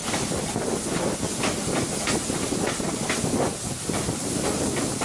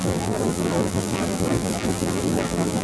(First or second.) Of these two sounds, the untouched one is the first